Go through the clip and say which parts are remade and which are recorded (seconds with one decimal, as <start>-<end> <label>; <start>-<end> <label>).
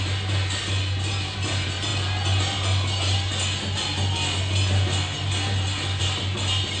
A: 0.0-6.8 recorded